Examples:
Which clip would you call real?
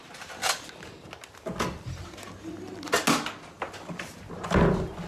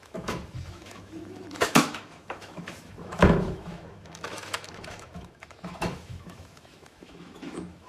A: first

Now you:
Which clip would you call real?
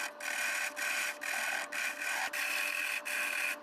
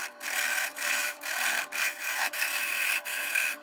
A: first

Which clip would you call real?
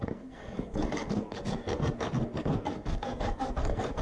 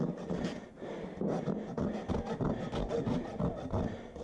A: second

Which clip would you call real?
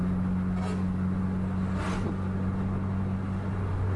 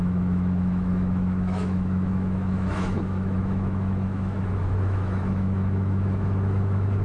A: first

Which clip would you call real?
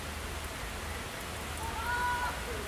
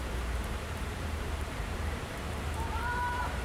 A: first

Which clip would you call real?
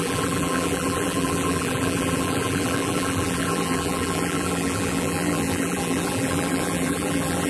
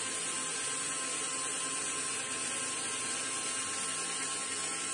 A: second